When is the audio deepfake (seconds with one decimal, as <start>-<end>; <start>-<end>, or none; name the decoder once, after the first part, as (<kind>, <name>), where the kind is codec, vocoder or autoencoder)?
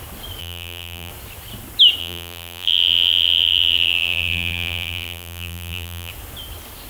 0.4-1.1 (vocoder, BigVGAN v2); 2.0-6.1